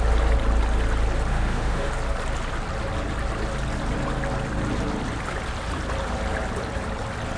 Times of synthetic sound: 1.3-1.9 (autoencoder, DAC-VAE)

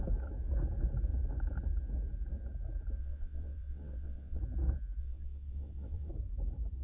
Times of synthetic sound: 3.0-4.4 (vocoder, WaveNeXt); 5.0-6.1